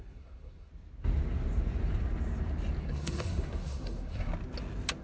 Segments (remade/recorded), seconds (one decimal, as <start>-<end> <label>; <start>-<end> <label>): 0.0-0.7 remade; 0.7-2.8 recorded; 2.8-4.3 remade; 4.3-5.0 recorded